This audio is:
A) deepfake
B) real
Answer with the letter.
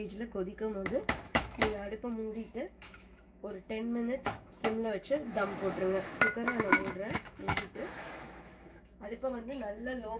A